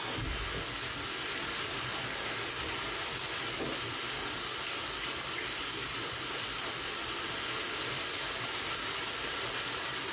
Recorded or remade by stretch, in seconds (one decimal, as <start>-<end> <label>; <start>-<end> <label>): 0.0-10.1 recorded